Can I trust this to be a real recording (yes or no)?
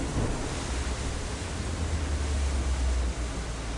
yes